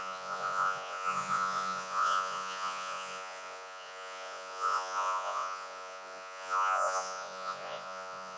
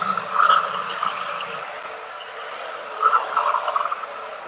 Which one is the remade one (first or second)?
first